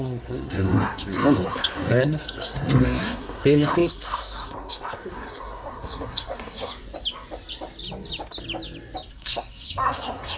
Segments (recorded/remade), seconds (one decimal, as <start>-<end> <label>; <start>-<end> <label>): 0.0-6.7 remade; 6.7-9.1 recorded; 9.1-10.4 remade